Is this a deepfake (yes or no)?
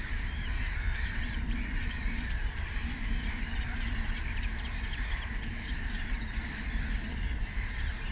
yes